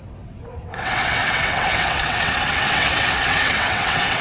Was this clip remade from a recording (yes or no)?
yes